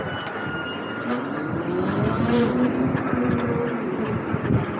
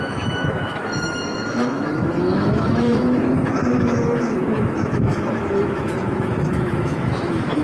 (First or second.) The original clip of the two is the first